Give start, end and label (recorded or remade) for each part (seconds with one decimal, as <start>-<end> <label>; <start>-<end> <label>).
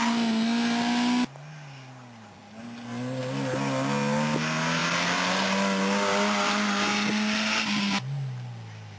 0.0-9.0 recorded